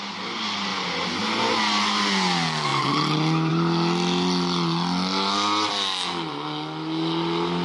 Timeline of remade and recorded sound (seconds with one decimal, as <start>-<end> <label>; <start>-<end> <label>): 0.0-7.6 recorded